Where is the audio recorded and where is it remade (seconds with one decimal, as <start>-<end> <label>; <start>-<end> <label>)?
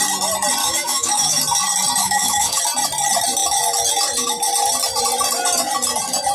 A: 0.0-0.6 recorded; 0.6-1.4 remade; 1.4-2.0 recorded; 2.0-2.6 remade; 2.6-6.3 recorded